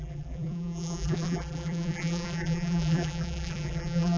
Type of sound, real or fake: fake